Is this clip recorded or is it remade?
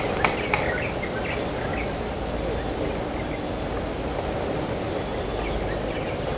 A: recorded